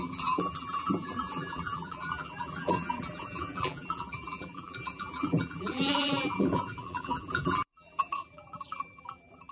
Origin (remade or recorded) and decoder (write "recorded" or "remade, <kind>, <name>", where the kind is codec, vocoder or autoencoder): remade, vocoder, BigVGAN v2